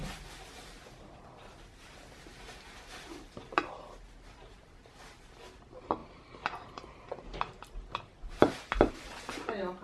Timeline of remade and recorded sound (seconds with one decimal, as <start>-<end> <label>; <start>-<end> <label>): 0.0-1.7 recorded; 1.7-3.5 remade; 3.5-9.8 recorded